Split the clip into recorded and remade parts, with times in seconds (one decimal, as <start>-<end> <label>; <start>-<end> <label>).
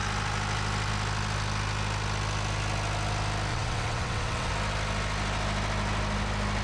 0.0-3.5 recorded; 3.5-4.5 remade; 4.5-6.6 recorded